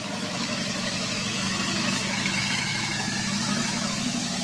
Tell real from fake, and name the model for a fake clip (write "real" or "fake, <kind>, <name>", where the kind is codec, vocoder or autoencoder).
fake, autoencoder, DAC-VAE